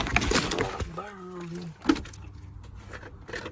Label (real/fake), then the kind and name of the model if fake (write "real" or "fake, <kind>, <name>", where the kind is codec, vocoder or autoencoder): real